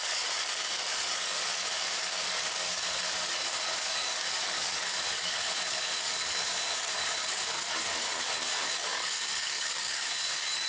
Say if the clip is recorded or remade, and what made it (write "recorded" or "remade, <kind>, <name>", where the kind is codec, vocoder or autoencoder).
remade, codec, DAC